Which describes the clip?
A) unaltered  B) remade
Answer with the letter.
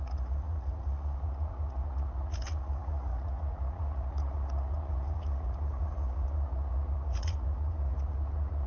B